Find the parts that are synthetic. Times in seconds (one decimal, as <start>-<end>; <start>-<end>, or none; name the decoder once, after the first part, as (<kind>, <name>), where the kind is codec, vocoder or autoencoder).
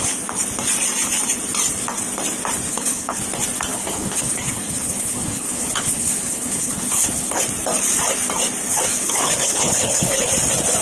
2.7-3.2 (codec, HILCodec); 3.7-7.4; 8.7-10.3